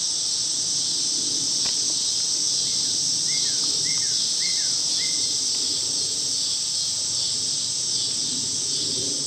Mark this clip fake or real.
real